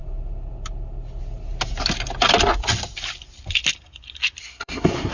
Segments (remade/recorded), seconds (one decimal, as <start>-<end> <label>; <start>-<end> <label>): 0.0-4.4 recorded; 4.4-5.1 remade